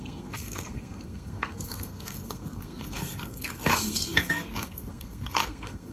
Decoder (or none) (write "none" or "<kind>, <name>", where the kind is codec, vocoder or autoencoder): codec, SNAC